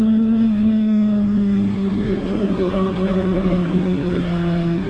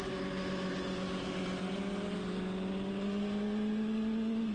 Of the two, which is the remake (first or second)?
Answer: first